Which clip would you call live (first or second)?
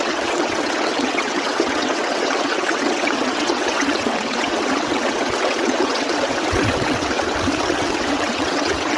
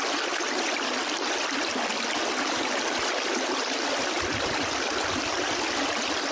second